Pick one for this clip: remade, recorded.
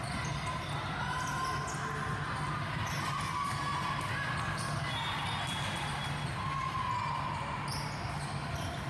recorded